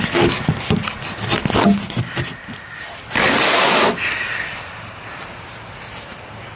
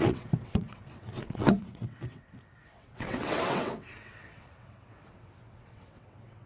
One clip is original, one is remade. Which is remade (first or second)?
second